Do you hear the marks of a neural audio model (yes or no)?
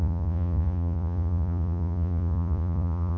yes